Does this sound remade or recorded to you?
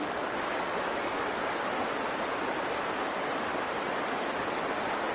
recorded